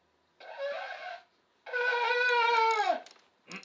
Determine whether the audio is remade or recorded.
recorded